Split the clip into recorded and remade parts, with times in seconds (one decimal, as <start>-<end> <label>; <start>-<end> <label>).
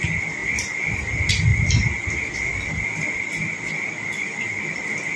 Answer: 0.0-0.4 recorded; 0.4-1.1 remade; 1.1-5.2 recorded